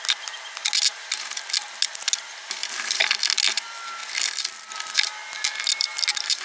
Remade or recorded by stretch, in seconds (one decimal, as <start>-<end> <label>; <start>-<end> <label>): 0.0-2.6 recorded; 2.6-3.1 remade; 3.1-6.4 recorded